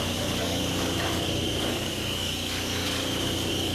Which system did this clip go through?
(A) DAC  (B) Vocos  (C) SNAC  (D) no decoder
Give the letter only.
A